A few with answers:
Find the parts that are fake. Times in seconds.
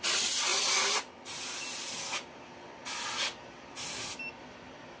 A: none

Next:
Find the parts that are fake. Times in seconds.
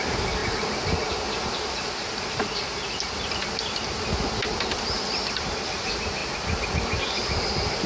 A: none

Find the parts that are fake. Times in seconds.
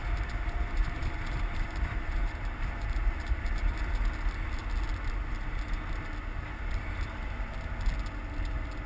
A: 0.0-3.9 (vocoder, BigVGAN v2)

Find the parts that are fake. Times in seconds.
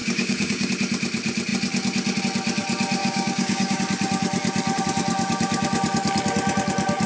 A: 0.0-0.7 (codec, DAC); 3.0-3.8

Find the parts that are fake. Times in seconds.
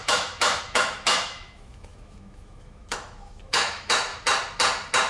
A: 0.0-4.1 (autoencoder, DAC-VAE)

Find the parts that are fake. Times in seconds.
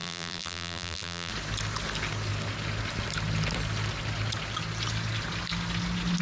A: 0.0-1.3 (vocoder, BigVGAN v2)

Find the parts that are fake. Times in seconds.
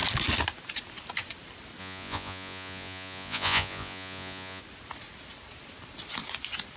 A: 1.8-4.6 (vocoder, Vocos)